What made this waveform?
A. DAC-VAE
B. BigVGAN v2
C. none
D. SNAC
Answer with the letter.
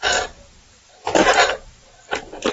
B